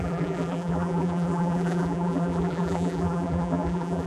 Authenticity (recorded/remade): remade